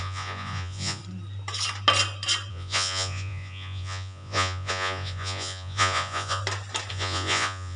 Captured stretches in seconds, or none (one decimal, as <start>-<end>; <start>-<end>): 1.0-2.5; 6.4-6.9